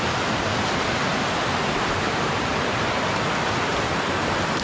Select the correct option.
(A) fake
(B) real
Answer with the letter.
B